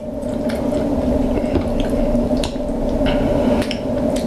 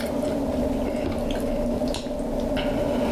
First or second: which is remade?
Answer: first